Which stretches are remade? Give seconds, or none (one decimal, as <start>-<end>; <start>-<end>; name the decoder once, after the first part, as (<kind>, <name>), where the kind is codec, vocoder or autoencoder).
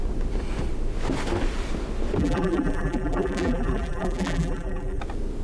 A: 2.2-5.0 (vocoder, BigVGAN v2)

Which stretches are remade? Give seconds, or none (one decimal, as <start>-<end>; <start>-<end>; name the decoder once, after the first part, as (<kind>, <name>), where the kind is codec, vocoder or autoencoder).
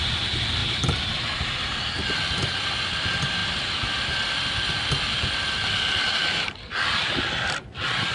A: 0.6-1.7 (vocoder, BigVGAN v2)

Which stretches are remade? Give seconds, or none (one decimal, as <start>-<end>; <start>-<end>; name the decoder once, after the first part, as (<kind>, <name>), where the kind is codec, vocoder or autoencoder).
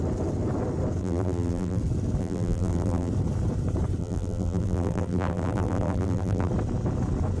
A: 1.0-1.8 (vocoder, BigVGAN v2); 2.2-3.1; 4.0-6.5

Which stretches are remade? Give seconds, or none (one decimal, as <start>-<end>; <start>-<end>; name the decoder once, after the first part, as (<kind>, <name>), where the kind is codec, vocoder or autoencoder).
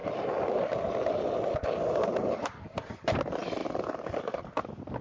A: 0.0-3.0 (vocoder, BigVGAN v2); 3.6-4.2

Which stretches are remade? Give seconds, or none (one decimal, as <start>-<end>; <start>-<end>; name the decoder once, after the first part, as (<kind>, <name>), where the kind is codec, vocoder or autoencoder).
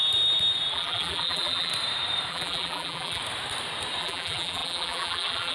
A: 0.7-1.7 (vocoder, BigVGAN v2); 2.3-3.2; 4.0-5.5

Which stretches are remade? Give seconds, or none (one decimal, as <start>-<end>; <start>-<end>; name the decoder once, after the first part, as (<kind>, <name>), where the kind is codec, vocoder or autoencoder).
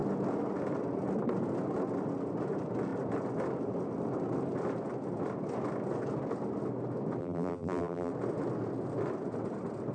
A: 7.2-8.1 (vocoder, BigVGAN v2)